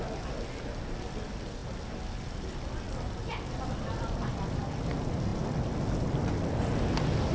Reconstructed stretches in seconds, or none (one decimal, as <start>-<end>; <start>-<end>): none